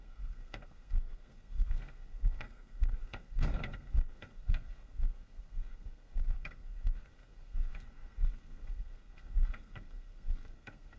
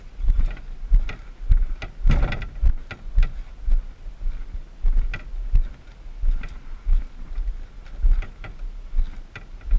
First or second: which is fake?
first